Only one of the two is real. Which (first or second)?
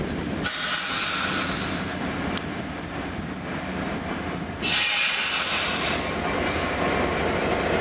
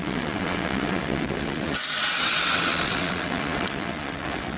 first